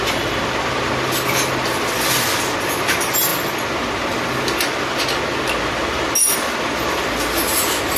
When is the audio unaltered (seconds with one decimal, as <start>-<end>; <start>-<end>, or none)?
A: 0.0-8.0